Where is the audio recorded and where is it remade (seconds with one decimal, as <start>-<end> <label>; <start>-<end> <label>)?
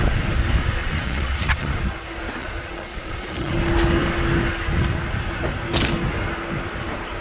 0.0-0.8 recorded; 0.8-1.7 remade; 1.7-2.4 recorded; 2.4-3.5 remade; 3.5-7.2 recorded